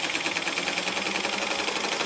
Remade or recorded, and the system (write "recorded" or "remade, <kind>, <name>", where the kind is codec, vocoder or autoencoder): recorded